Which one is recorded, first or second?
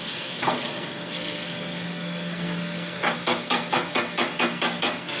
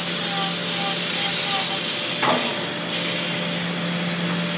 second